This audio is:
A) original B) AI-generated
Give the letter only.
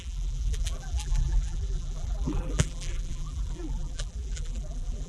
B